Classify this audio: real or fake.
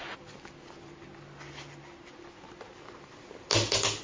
real